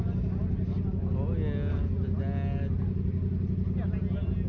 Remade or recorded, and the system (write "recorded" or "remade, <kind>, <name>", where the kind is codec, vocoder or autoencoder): recorded